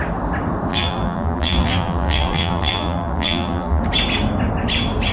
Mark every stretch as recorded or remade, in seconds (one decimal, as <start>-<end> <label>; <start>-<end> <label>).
0.0-0.7 recorded; 0.7-3.8 remade; 3.8-5.1 recorded